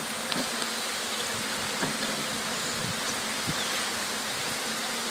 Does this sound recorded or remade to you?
recorded